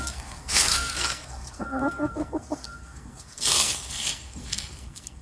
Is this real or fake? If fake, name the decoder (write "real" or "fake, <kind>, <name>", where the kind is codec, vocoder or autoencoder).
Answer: fake, codec, SNAC